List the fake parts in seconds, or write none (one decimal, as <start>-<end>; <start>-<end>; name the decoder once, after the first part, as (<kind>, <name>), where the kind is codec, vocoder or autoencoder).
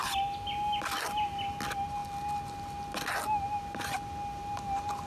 none